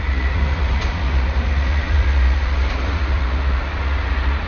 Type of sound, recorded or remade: remade